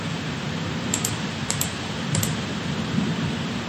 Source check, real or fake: fake